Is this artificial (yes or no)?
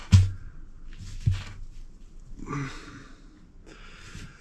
no